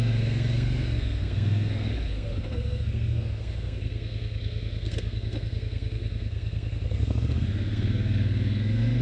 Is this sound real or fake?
fake